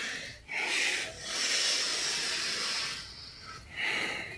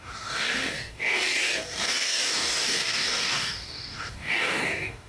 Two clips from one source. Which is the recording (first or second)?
first